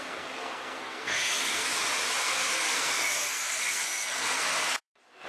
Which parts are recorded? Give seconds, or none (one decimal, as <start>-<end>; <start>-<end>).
1.7-2.2